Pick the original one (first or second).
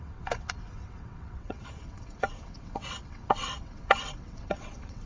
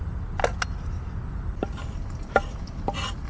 second